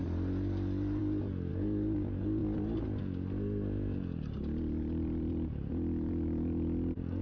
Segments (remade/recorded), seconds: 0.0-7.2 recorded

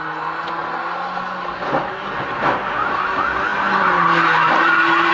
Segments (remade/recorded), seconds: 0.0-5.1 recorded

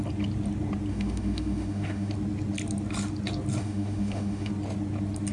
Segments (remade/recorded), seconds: 0.0-0.9 recorded; 0.9-2.1 remade; 2.1-3.6 recorded; 3.6-4.5 remade; 4.5-5.3 recorded

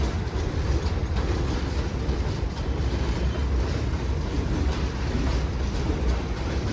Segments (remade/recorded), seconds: 0.0-1.0 remade; 1.0-2.0 recorded; 2.0-3.4 remade; 3.4-6.3 recorded; 6.3-6.7 remade

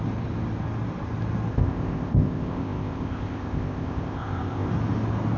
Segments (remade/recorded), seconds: 0.0-1.5 recorded; 1.5-4.7 remade; 4.7-5.4 recorded

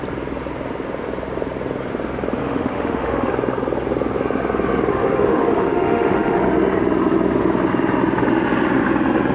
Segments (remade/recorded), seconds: 0.0-2.4 recorded; 2.4-3.3 remade; 3.3-4.9 recorded; 4.9-6.4 remade; 6.4-9.3 recorded

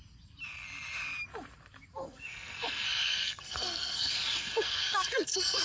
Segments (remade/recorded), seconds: 0.0-2.0 recorded; 2.0-5.6 remade